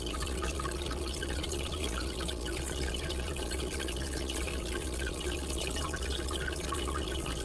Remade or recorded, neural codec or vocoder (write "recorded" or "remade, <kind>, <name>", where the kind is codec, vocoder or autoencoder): remade, vocoder, Vocos